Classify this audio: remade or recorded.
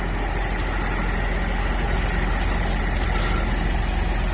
recorded